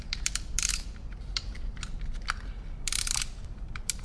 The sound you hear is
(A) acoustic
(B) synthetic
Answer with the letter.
B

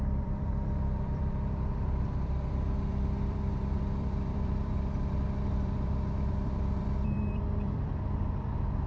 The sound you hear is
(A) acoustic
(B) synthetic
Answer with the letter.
B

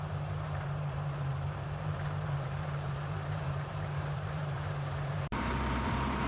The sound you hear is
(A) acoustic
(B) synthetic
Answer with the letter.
B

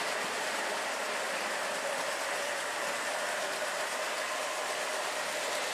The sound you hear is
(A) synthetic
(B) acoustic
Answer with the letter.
B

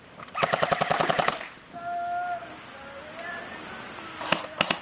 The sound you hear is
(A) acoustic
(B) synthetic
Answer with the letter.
A